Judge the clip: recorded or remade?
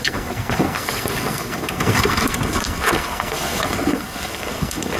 remade